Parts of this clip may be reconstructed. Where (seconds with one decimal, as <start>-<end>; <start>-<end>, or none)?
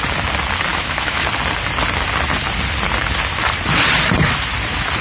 0.7-1.2